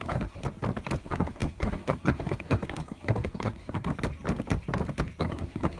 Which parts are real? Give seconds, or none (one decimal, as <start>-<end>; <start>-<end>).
0.4-1.0; 3.9-5.2

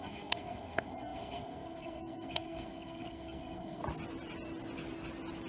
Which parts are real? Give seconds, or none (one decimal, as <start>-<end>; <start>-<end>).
3.8-5.5